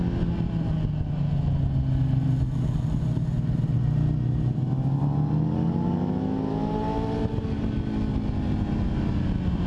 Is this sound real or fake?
real